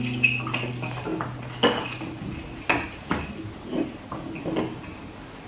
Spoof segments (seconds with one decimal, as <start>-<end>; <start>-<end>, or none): none